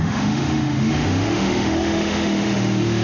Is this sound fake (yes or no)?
yes